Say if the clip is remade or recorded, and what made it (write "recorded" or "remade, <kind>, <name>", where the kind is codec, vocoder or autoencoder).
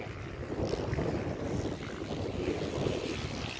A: recorded